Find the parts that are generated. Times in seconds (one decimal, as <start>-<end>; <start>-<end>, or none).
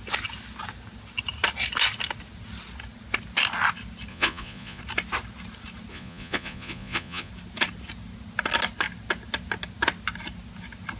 4.1-4.8; 5.9-7.3